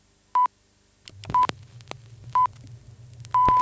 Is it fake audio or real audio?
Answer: real